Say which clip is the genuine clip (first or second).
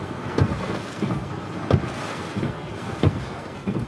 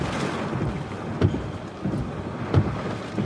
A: second